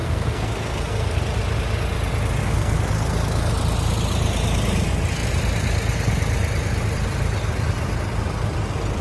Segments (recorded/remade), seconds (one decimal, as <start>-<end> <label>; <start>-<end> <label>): 0.0-1.2 remade; 1.2-2.4 recorded; 2.4-3.5 remade; 3.5-9.0 recorded